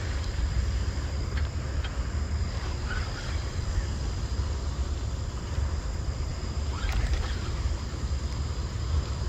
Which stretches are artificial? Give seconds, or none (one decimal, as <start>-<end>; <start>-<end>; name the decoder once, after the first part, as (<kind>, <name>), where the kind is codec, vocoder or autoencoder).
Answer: 6.3-7.7 (vocoder, BigVGAN v2); 8.6-9.3